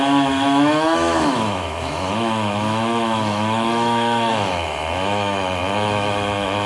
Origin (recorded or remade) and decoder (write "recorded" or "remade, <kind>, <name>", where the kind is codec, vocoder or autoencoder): remade, autoencoder, DAC-VAE